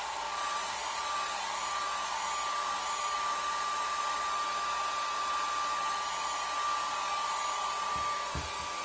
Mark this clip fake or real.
real